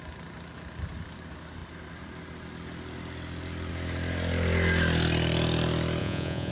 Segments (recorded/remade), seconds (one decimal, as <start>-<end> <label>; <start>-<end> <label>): 0.0-6.0 recorded; 6.0-6.5 remade